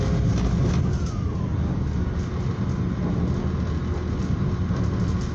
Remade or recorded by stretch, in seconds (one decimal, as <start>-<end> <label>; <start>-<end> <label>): 0.0-5.3 recorded